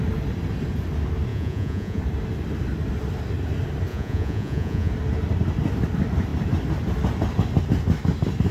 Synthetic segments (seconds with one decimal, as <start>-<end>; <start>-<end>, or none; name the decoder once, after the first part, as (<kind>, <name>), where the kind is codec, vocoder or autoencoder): 1.3-2.0 (vocoder, Vocos); 3.9-4.9